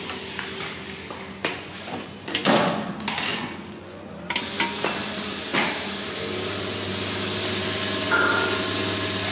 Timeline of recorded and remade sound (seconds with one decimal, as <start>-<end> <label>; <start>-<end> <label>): 0.0-1.4 recorded; 1.4-2.9 remade; 2.9-3.3 recorded; 3.3-4.1 remade; 4.1-9.3 recorded